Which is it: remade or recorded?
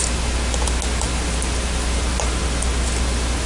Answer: recorded